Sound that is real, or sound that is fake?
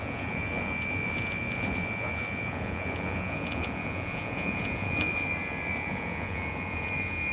fake